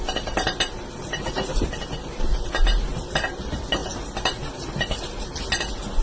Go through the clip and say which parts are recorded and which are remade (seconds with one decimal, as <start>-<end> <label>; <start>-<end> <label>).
0.0-6.0 recorded

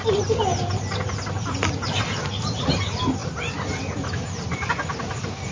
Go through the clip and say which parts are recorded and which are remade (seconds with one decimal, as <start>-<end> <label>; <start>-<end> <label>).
0.0-5.5 recorded

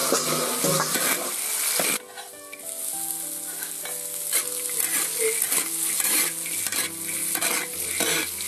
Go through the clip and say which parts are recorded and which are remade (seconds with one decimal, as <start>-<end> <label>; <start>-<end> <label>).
0.0-8.5 recorded